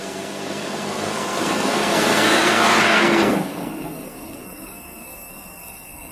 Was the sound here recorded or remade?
remade